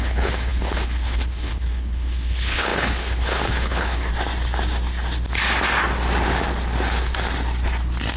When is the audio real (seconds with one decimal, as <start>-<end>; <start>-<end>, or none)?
4.1-8.2